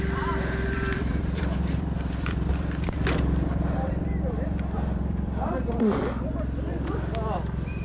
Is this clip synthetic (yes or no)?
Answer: yes